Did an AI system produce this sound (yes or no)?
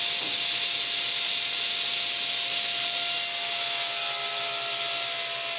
no